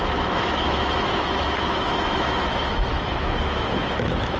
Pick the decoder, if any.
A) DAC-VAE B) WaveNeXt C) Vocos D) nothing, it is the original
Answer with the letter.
A